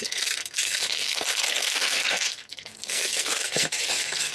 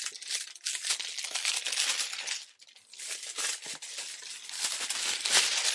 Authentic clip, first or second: second